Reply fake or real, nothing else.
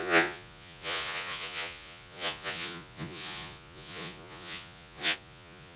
fake